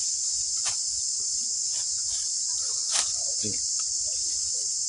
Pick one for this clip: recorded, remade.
remade